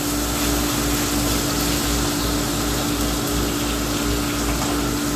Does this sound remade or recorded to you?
recorded